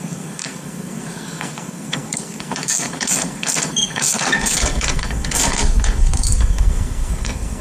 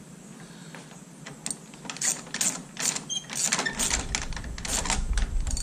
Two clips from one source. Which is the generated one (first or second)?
first